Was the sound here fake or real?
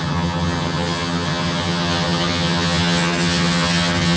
fake